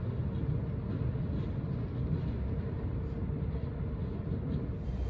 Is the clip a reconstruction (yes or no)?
no